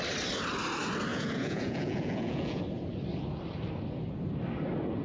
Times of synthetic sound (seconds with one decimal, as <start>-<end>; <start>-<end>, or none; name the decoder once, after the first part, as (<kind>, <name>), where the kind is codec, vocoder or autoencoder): 1.1-2.6 (vocoder, Vocos)